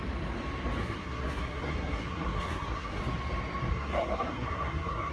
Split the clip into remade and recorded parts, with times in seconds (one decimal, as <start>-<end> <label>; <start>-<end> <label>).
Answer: 0.0-0.8 recorded; 0.8-3.0 remade; 3.0-3.7 recorded; 3.7-5.1 remade